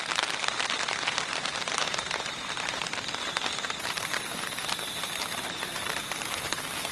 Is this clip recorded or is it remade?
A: remade